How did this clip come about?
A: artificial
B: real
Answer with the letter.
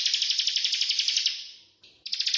B